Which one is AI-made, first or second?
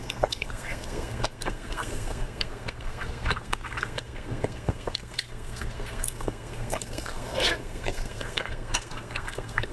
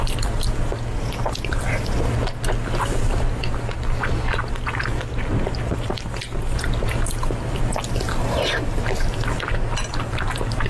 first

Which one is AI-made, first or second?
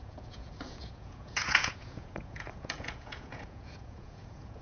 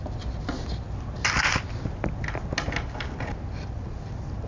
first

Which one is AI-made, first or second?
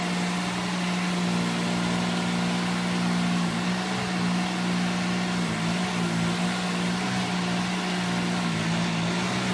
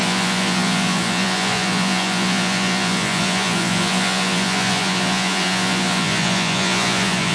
second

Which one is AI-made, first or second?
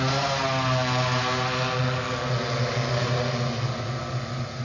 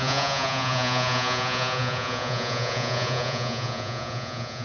second